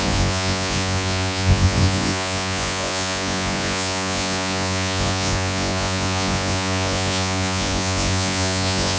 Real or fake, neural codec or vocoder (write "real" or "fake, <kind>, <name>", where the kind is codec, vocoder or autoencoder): fake, vocoder, Vocos